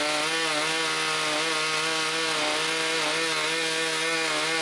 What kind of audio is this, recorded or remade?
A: recorded